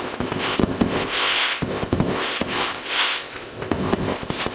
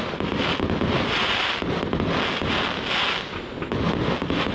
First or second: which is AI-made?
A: first